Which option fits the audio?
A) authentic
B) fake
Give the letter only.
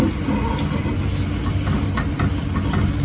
A